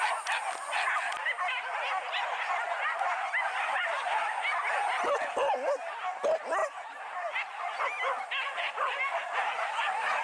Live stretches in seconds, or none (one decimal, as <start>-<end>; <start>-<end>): 0.0-10.2